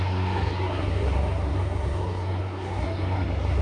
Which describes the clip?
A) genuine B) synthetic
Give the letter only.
B